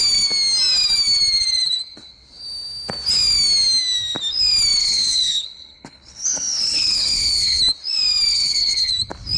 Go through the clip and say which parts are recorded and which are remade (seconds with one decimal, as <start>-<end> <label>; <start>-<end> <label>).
0.0-4.8 recorded; 4.8-7.6 remade; 7.6-8.3 recorded; 8.3-8.9 remade; 8.9-9.4 recorded